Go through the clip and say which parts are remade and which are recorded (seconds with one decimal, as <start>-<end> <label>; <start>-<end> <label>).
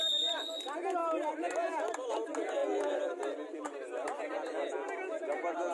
0.0-5.7 recorded